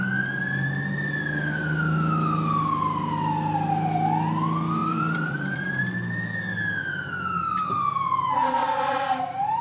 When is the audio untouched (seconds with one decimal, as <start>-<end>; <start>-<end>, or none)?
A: 0.0-4.8; 5.8-8.6